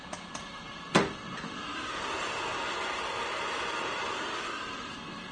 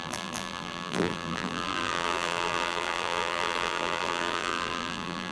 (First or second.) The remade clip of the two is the second